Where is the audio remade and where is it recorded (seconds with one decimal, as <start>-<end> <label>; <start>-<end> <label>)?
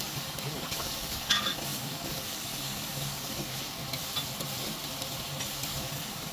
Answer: 0.0-3.8 remade; 3.8-5.8 recorded; 5.8-6.3 remade